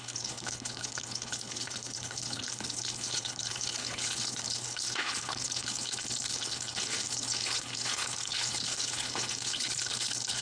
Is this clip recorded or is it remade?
remade